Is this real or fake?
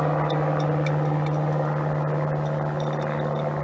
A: real